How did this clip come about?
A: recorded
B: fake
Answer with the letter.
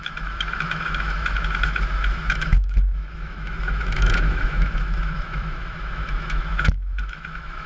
B